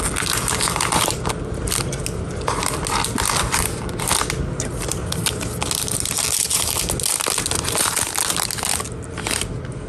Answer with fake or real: real